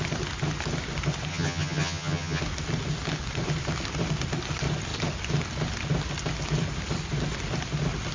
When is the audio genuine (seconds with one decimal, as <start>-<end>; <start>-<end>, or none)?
0.0-1.3; 2.4-8.1